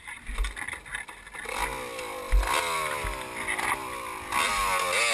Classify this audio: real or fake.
real